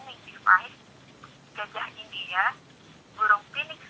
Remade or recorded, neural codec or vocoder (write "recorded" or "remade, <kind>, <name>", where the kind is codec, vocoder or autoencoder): recorded